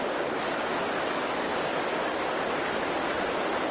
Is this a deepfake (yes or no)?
no